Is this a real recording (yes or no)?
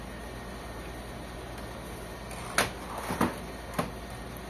yes